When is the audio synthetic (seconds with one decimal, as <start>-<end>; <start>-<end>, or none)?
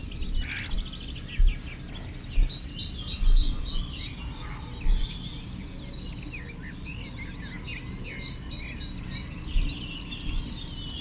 none